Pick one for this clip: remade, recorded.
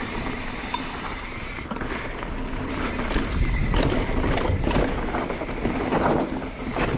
recorded